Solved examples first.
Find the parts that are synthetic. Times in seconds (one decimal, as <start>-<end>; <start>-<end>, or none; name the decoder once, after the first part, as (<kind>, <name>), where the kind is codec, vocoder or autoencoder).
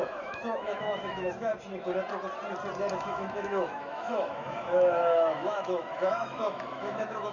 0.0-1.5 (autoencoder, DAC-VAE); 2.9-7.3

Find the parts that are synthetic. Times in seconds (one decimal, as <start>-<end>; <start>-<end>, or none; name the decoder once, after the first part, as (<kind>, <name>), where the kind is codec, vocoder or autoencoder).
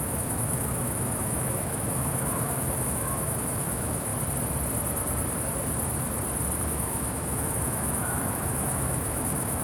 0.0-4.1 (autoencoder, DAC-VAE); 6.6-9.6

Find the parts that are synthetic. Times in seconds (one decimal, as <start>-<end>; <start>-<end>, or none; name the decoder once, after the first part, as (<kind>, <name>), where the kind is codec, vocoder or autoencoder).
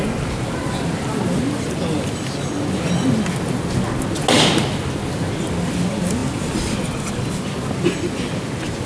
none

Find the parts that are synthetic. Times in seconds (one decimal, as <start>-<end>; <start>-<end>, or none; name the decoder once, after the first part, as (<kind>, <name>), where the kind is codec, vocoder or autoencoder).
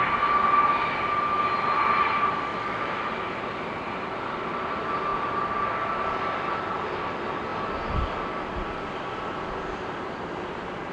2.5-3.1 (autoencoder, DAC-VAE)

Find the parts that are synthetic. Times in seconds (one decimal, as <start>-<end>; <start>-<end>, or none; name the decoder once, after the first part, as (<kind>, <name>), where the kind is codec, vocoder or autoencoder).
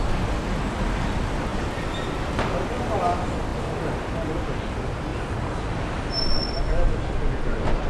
none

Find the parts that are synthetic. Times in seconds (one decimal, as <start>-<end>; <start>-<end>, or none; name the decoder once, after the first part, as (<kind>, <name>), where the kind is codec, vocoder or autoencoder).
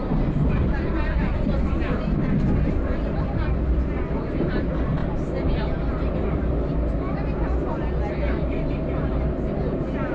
none